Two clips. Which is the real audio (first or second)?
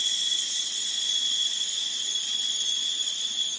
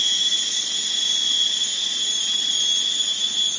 second